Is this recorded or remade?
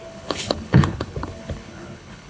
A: remade